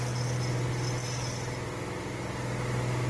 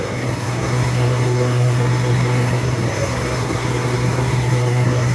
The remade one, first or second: second